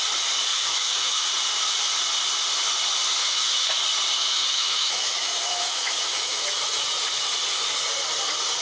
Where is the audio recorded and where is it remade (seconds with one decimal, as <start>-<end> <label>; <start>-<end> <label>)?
0.0-0.5 recorded; 0.5-1.3 remade; 1.3-3.2 recorded; 3.2-3.7 remade; 3.7-4.3 recorded; 4.3-6.5 remade; 6.5-8.6 recorded